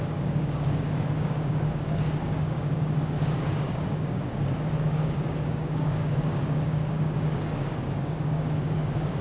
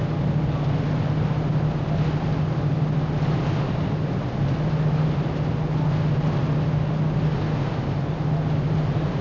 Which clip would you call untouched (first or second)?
second